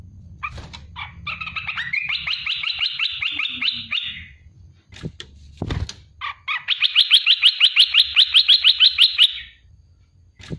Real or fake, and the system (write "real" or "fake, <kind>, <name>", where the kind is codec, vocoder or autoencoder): real